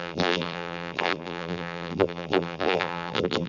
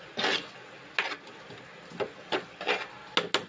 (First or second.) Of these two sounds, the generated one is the first